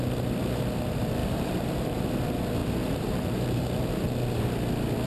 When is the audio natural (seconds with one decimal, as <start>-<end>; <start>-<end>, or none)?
0.0-1.2; 2.2-2.6; 3.6-5.1